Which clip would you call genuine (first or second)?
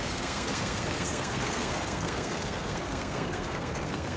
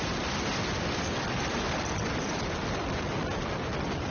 second